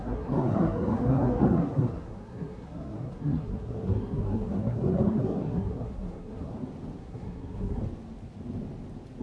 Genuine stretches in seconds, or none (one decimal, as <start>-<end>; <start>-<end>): 6.5-7.0; 7.8-9.2